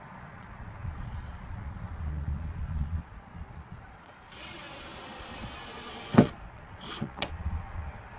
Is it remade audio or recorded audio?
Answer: remade